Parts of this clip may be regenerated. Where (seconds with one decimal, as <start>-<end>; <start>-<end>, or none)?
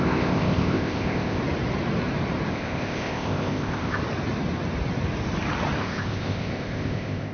0.0-1.4; 2.5-4.0; 5.8-7.3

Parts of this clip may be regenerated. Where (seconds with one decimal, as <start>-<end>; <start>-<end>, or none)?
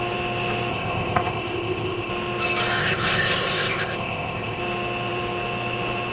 0.7-2.1; 2.8-4.6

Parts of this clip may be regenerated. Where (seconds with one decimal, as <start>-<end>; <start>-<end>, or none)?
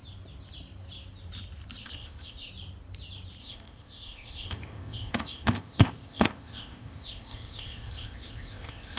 1.8-2.5; 3.4-9.0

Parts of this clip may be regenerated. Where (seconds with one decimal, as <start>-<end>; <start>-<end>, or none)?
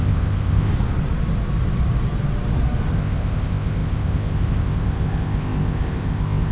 0.0-0.7; 2.9-6.5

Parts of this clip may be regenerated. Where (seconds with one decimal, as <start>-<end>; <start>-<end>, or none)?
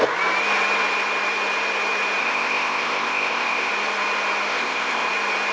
2.2-3.7; 4.5-5.1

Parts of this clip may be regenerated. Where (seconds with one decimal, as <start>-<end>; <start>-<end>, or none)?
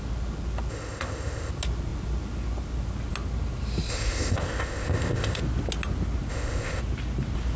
0.7-1.5; 3.9-5.4; 6.3-6.8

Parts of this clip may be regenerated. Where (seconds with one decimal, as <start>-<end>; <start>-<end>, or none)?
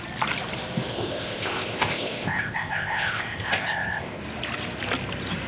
0.9-4.2